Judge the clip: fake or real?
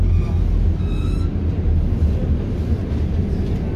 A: real